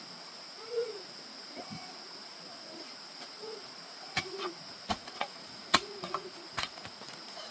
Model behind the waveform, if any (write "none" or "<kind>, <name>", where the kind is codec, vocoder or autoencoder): vocoder, Vocos